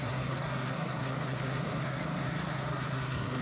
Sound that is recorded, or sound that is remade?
remade